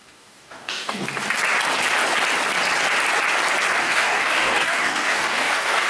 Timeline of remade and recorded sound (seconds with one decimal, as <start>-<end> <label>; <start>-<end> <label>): 0.0-1.0 remade; 1.0-3.8 recorded; 3.8-5.9 remade